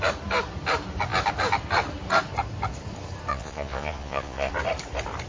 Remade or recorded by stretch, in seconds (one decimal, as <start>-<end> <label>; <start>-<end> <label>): 0.0-3.3 recorded; 3.3-4.5 remade; 4.5-5.3 recorded